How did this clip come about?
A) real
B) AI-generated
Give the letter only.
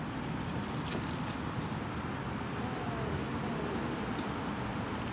A